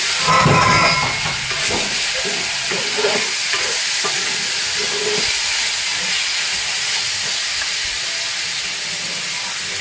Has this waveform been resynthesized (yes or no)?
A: no